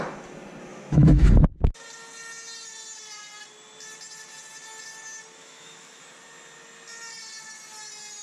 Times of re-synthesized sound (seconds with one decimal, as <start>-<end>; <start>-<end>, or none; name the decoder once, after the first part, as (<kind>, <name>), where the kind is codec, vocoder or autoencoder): 0.7-1.3 (autoencoder, DAC-VAE); 5.4-6.0